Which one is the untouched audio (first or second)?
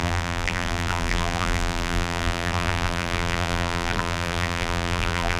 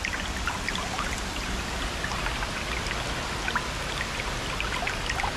second